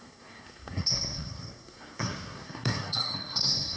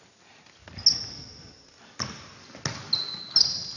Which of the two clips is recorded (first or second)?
second